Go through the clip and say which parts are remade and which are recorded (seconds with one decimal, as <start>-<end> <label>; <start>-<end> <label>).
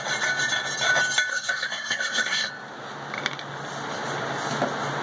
0.0-1.3 recorded; 1.3-2.5 remade; 2.5-5.0 recorded